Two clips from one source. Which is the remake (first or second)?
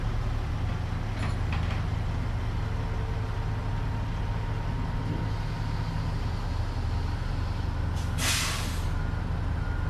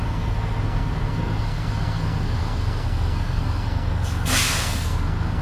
second